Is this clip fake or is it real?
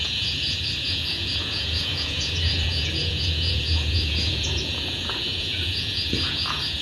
fake